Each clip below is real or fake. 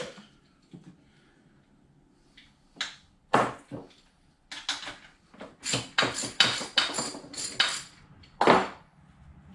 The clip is real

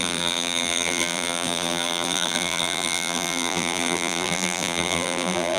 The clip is fake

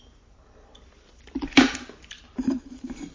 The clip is fake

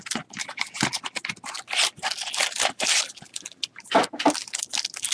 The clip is real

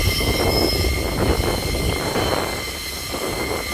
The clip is fake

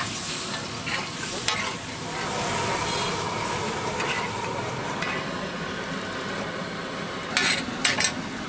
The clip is real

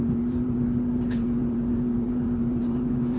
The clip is fake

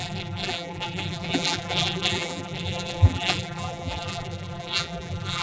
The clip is fake